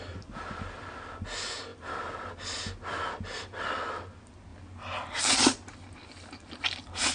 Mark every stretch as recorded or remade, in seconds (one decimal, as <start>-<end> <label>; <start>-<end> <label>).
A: 0.0-7.1 recorded